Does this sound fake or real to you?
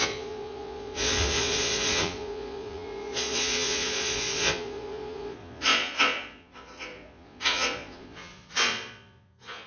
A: fake